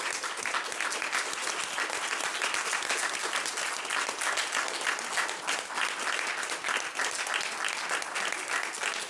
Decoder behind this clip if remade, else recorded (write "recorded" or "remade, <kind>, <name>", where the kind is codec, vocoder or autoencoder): recorded